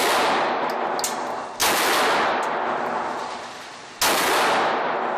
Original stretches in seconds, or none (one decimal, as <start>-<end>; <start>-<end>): 0.0-5.2